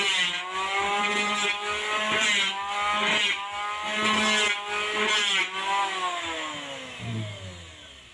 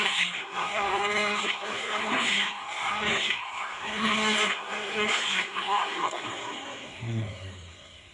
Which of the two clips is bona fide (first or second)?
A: first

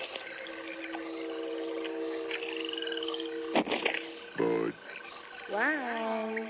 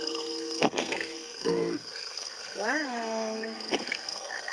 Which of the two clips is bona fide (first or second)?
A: first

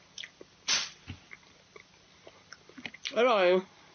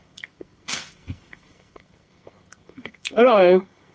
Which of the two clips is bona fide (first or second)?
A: first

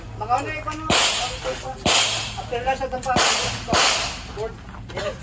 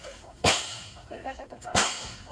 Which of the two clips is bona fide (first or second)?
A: first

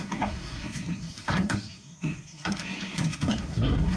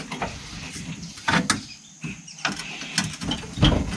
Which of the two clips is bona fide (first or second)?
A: second